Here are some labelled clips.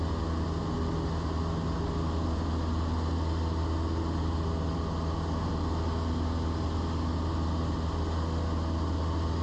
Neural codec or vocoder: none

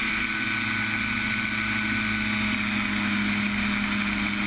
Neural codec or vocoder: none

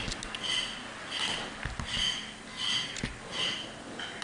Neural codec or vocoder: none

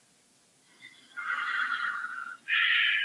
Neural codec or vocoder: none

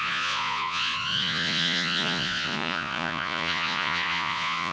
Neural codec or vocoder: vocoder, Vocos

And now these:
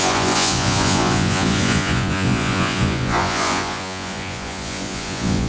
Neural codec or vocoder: vocoder, Vocos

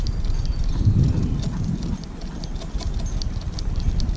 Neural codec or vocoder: none